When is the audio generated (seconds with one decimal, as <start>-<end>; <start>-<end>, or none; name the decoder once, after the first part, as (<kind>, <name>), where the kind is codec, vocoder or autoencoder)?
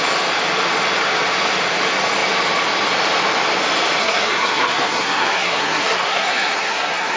4.0-7.2 (codec, SNAC)